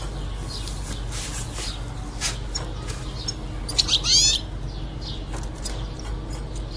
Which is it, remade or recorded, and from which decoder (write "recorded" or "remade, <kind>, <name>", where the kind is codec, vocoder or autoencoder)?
recorded